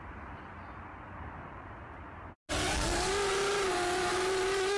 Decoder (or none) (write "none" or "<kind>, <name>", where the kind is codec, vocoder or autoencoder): none